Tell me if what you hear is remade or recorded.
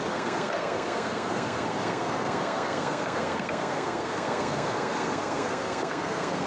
remade